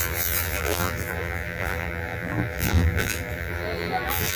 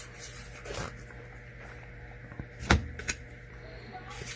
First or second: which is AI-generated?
first